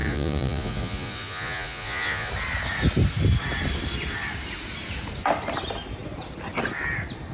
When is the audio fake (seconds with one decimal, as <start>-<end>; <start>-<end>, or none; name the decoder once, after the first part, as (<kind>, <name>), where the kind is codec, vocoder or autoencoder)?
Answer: 0.0-2.3 (vocoder, Vocos)